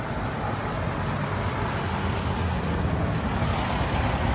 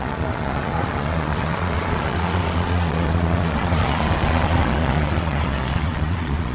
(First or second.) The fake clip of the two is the second